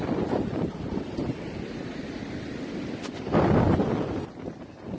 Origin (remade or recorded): recorded